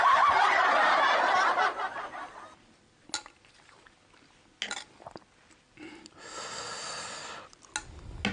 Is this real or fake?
real